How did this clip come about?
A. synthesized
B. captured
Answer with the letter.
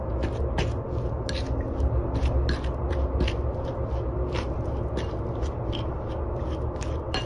B